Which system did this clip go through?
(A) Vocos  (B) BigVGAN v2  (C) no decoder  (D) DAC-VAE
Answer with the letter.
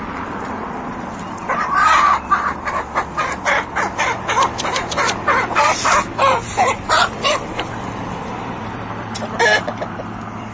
B